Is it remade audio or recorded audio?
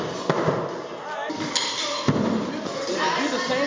recorded